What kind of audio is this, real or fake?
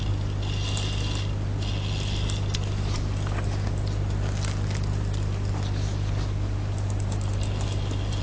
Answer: real